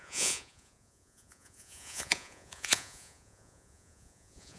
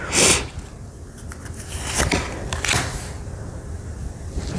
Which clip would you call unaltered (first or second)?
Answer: second